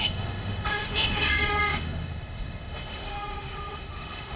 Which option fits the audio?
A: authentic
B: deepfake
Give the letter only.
B